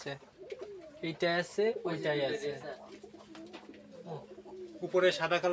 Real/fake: real